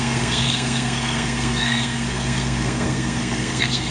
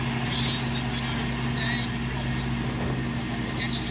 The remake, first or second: first